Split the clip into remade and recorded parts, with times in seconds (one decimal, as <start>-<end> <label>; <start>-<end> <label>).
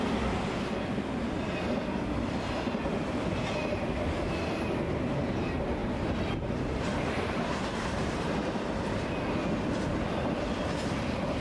0.0-5.8 recorded; 5.8-8.3 remade; 8.3-11.4 recorded